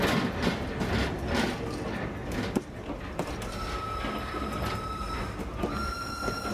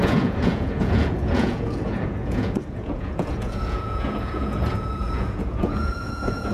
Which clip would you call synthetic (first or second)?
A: second